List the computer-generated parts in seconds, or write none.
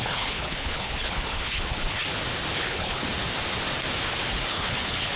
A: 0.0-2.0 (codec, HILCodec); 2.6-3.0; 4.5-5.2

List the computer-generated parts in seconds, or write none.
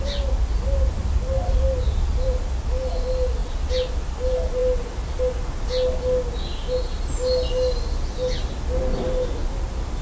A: none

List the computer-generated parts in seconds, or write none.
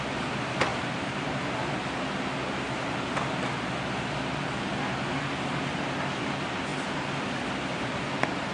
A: none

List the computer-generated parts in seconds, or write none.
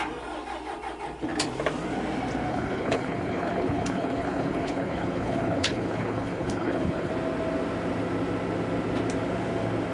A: 2.5-7.1 (codec, HILCodec)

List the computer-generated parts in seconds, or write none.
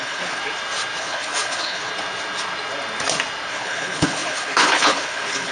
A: 0.0-0.4 (codec, HILCodec); 1.0-1.9; 3.5-5.5